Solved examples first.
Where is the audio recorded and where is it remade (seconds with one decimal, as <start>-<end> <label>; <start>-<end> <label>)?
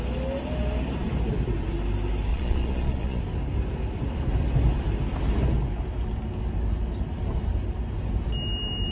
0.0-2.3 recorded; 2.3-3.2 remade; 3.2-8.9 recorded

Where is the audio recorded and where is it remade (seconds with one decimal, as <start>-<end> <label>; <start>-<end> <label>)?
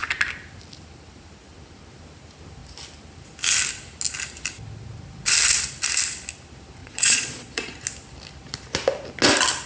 0.0-6.8 recorded; 6.8-7.8 remade; 7.8-9.7 recorded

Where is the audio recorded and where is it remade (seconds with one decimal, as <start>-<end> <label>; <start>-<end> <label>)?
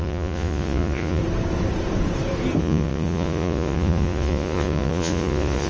0.0-1.2 remade; 1.2-2.6 recorded; 2.6-5.7 remade